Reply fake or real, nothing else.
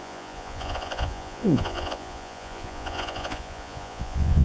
fake